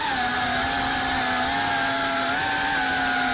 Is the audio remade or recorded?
recorded